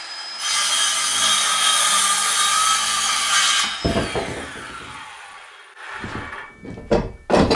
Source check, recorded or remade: recorded